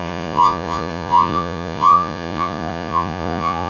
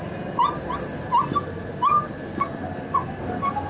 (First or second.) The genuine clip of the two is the second